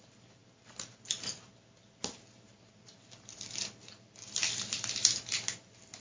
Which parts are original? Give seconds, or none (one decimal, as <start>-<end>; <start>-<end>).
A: 0.0-6.0